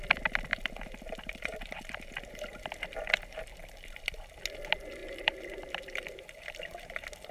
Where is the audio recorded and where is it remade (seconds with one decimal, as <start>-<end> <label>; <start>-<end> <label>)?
0.0-0.5 recorded; 0.5-3.4 remade; 3.4-5.0 recorded; 5.0-5.6 remade; 5.6-7.3 recorded